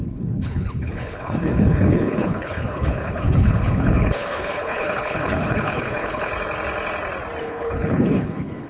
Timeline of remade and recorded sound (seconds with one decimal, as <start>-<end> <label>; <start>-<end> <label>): 0.0-6.3 remade; 6.3-7.4 recorded; 7.4-8.7 remade